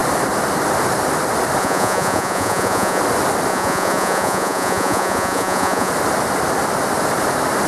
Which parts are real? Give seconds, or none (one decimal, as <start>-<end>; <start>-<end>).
0.0-1.6; 3.0-3.5; 5.9-7.7